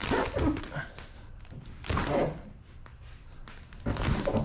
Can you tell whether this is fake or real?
real